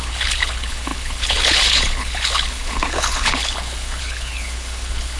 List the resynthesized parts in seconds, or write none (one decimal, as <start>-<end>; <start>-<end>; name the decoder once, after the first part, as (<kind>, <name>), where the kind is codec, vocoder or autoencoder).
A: 0.0-5.2 (codec, HILCodec)